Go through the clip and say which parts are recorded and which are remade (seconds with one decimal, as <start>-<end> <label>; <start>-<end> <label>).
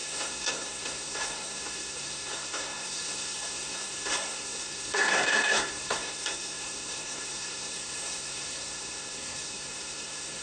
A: 0.0-10.4 remade